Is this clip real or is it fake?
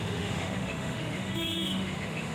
fake